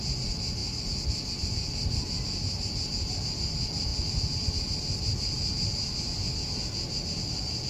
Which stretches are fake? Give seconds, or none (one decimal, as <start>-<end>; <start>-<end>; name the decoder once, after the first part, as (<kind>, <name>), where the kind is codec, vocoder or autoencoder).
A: none